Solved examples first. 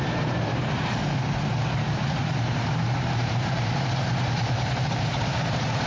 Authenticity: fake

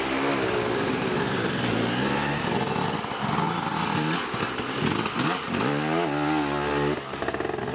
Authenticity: real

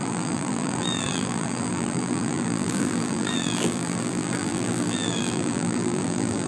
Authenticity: fake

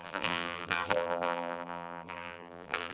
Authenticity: fake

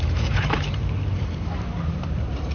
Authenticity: fake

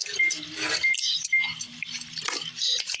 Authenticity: real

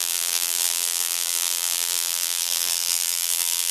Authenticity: fake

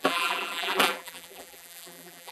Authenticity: fake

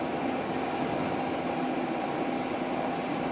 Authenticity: real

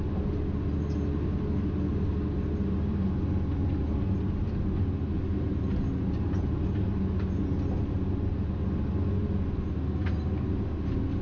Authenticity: real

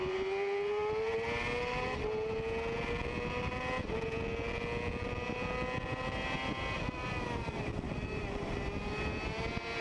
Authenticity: real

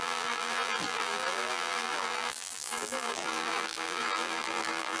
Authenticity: fake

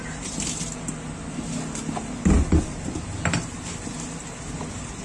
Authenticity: real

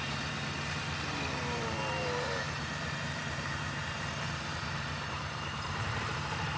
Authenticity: fake